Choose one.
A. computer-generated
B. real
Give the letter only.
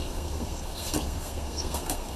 A